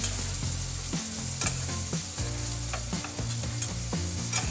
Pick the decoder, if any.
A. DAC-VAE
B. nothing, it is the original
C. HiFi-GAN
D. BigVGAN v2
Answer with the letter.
B